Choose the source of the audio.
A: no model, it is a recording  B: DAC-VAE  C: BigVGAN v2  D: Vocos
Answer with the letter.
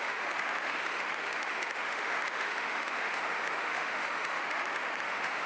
B